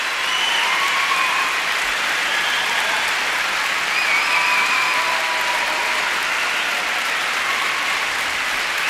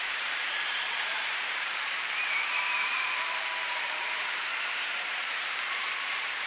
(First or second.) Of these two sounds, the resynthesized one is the second